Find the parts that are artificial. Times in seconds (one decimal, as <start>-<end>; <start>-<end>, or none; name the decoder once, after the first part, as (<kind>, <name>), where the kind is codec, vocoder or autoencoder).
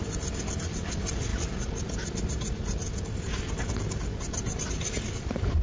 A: none